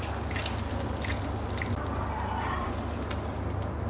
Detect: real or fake real